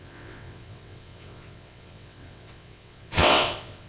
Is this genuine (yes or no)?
no